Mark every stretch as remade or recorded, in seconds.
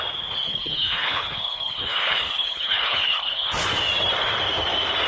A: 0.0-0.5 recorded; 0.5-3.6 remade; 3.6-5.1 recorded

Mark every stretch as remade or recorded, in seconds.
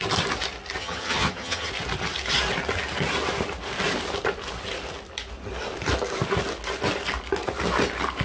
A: 0.0-0.8 recorded; 0.8-1.7 remade; 1.7-8.2 recorded